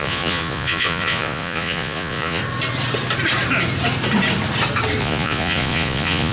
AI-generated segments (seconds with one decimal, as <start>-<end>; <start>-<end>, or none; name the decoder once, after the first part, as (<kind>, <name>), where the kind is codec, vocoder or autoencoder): 0.0-2.4 (vocoder, Vocos); 5.0-6.3